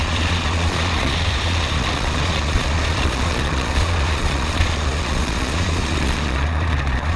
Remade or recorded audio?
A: remade